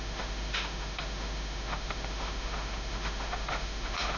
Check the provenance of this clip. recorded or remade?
remade